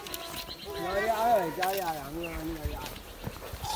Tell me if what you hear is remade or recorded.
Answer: recorded